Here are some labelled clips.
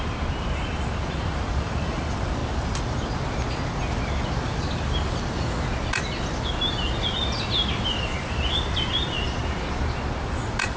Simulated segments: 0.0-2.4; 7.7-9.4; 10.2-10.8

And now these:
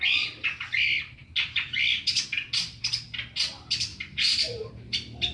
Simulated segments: none

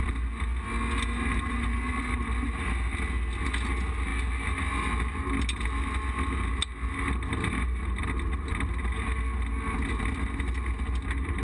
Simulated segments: 1.3-2.0

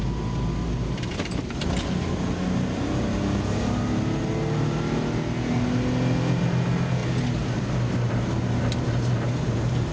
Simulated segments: none

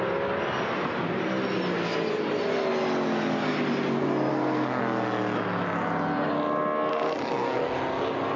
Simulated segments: 4.3-4.8; 6.9-7.6

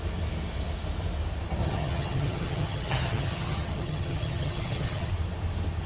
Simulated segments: 1.6-5.1

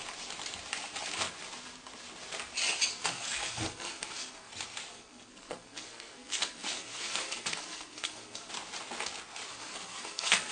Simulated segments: 2.9-4.5; 4.9-8.5; 9.5-10.5